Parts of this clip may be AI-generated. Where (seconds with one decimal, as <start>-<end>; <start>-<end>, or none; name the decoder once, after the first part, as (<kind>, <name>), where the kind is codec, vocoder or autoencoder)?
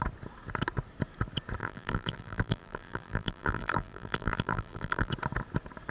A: 1.6-5.1 (vocoder, BigVGAN v2)